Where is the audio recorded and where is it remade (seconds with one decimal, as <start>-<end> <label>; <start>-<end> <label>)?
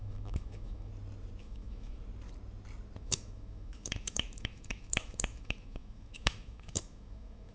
0.0-0.9 remade; 0.9-1.4 recorded; 1.4-2.0 remade; 2.0-3.0 recorded; 3.0-7.5 remade